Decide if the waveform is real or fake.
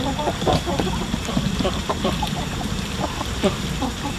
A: fake